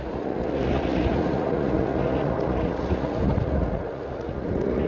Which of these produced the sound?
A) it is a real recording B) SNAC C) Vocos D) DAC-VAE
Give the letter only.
C